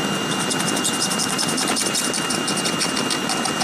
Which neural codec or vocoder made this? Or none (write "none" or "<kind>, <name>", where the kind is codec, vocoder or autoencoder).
none